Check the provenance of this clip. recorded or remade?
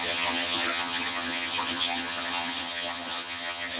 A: remade